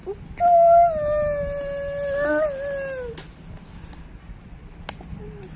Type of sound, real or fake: real